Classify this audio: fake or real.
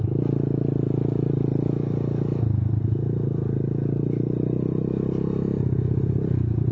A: real